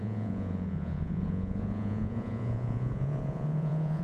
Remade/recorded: remade